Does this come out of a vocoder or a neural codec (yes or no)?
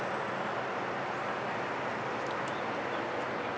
no